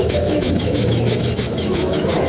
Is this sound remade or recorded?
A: remade